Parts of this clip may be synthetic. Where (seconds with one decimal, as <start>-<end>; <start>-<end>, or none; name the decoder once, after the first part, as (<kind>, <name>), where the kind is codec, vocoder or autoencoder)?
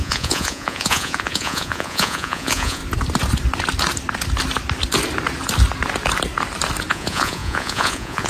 0.0-2.8 (vocoder, Vocos); 6.9-8.3